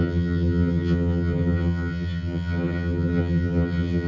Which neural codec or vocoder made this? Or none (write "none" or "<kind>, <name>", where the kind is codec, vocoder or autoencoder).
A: vocoder, HiFi-GAN